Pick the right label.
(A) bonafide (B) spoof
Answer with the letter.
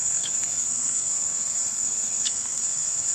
B